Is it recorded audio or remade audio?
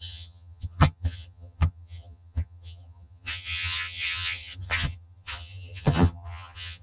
remade